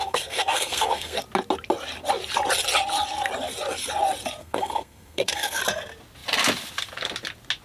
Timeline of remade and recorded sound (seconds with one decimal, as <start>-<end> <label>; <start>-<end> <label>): 0.0-1.2 remade; 1.2-4.4 recorded; 4.4-5.6 remade; 5.6-7.6 recorded